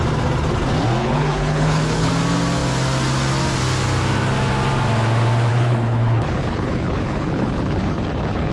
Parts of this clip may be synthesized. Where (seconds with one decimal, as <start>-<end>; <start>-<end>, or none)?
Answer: 1.0-2.1; 5.5-8.5